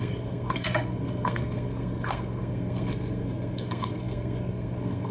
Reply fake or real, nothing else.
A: fake